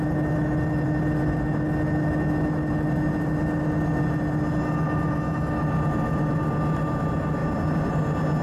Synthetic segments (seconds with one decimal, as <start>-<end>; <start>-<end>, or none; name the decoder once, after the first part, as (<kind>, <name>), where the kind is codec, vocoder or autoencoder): none